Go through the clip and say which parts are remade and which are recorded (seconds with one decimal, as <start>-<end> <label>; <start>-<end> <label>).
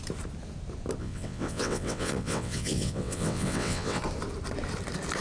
0.0-1.0 recorded; 1.0-4.0 remade; 4.0-5.2 recorded